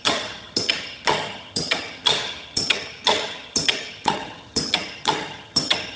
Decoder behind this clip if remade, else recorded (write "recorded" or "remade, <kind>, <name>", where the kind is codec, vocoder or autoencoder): remade, vocoder, HiFi-GAN